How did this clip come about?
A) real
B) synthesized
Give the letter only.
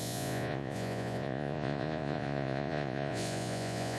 B